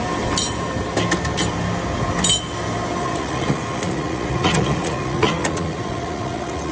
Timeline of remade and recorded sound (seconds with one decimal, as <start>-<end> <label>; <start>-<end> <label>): 0.0-3.0 recorded; 3.0-6.7 remade

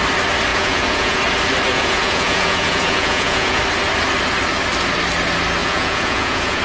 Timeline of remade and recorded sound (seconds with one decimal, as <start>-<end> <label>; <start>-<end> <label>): 0.0-0.5 recorded; 0.5-1.2 remade; 1.2-1.7 recorded; 1.7-3.6 remade; 3.6-5.6 recorded; 5.6-6.6 remade

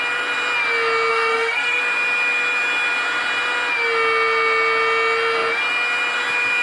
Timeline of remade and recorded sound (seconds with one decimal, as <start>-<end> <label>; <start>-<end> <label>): 0.0-1.1 recorded; 1.1-1.8 remade; 1.8-6.6 recorded